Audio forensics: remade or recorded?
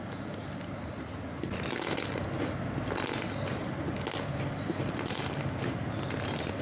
recorded